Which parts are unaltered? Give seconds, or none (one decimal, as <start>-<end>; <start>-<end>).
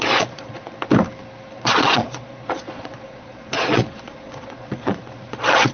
0.9-1.5